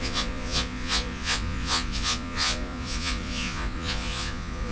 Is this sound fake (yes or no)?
yes